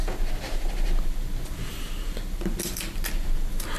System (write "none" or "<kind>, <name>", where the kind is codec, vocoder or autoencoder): none